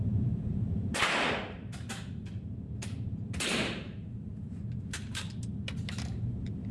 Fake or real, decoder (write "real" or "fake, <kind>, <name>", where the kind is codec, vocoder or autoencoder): fake, vocoder, BigVGAN v2